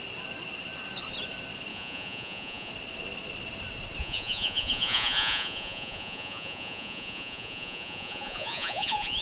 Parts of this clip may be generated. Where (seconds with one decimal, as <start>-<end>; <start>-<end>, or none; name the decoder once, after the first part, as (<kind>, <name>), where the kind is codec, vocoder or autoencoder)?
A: 1.7-2.7 (vocoder, Vocos); 4.0-9.2

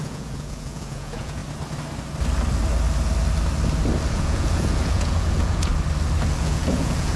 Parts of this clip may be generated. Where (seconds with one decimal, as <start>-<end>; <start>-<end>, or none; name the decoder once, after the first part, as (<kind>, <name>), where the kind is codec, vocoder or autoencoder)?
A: 0.0-1.4 (vocoder, Vocos); 4.1-5.7; 6.4-7.2

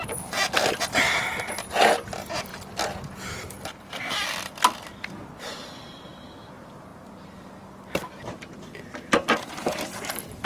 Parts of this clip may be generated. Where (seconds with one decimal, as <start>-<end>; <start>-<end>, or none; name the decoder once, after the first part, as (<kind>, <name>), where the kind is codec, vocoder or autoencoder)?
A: none

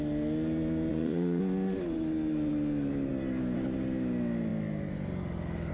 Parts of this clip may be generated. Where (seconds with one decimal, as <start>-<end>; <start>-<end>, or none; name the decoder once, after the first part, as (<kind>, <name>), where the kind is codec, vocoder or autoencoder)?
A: 0.9-1.4 (vocoder, Vocos)